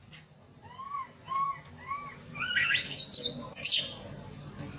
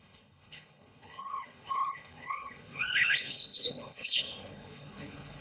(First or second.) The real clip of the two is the first